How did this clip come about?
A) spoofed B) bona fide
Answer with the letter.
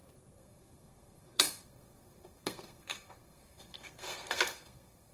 A